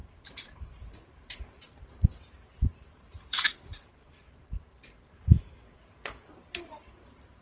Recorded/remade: remade